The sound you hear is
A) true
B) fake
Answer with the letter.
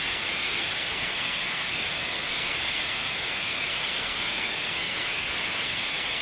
B